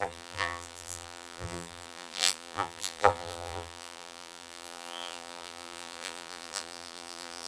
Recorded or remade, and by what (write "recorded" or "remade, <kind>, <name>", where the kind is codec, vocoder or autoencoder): remade, vocoder, BigVGAN v2